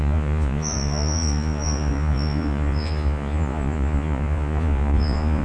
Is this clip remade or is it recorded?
remade